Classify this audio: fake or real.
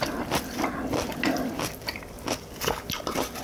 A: real